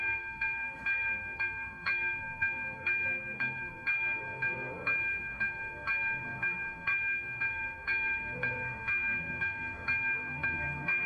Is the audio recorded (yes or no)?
no